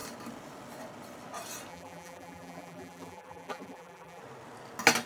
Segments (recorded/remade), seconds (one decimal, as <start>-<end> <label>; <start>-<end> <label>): 0.0-1.7 recorded; 1.7-4.2 remade; 4.2-5.1 recorded